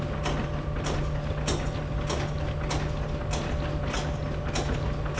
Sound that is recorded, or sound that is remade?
recorded